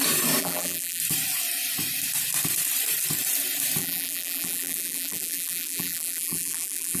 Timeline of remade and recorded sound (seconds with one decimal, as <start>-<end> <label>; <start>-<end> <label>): 0.0-0.4 recorded; 0.4-1.0 remade; 1.0-3.8 recorded; 3.8-7.0 remade